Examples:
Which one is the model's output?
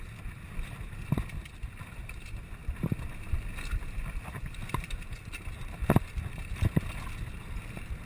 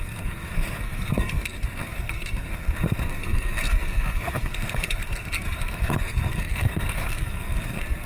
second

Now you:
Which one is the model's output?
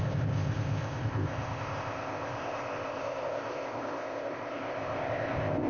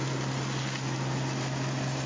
first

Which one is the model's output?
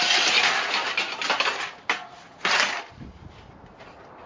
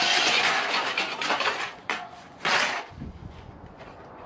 second